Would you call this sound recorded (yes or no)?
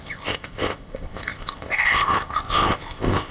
no